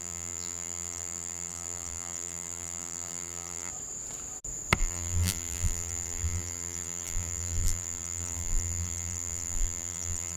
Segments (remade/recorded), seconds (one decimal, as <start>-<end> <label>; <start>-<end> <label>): 0.0-3.7 remade; 3.7-4.8 recorded; 4.8-10.4 remade